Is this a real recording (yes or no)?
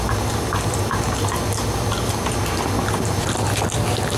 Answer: yes